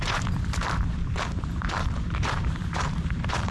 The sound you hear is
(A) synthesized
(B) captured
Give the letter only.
A